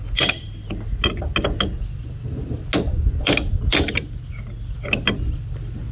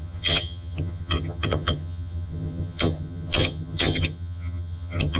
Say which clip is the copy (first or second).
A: second